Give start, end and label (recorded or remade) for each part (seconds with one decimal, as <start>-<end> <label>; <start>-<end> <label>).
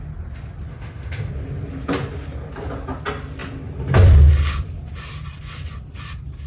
0.0-0.7 recorded; 0.7-1.3 remade; 1.3-6.5 recorded